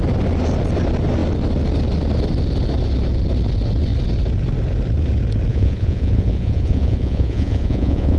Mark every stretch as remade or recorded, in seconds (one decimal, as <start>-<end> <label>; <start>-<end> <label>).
0.0-5.5 recorded; 5.5-8.2 remade